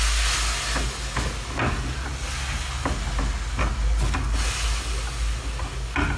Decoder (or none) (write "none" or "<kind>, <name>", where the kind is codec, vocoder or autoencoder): none